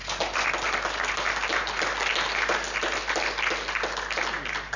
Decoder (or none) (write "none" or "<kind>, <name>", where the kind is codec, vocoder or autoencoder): none